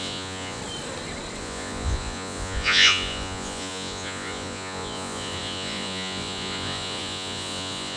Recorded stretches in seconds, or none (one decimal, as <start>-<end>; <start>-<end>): 0.6-1.4